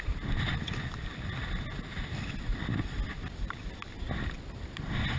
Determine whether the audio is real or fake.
real